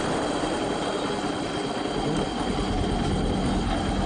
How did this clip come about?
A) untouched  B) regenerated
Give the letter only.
A